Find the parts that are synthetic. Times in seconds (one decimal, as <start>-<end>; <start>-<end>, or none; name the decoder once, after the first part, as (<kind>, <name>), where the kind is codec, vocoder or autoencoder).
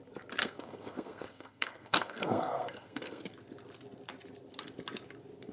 0.4-3.2 (codec, SNAC)